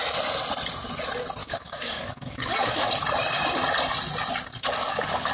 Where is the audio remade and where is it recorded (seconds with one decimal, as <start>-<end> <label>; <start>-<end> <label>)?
0.0-1.4 recorded; 1.4-2.9 remade; 2.9-4.6 recorded; 4.6-5.3 remade